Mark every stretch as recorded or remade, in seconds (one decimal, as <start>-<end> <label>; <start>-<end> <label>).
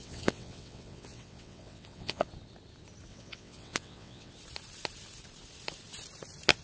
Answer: 0.0-2.3 remade; 2.3-3.1 recorded; 3.1-4.3 remade; 4.3-6.6 recorded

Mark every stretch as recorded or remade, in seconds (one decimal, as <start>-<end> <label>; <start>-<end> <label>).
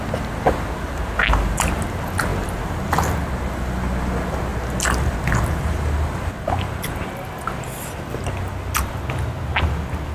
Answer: 0.0-2.3 recorded; 2.3-2.8 remade; 2.8-10.1 recorded